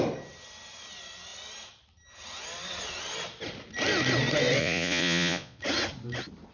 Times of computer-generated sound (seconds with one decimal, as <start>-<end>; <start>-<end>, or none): 4.6-5.6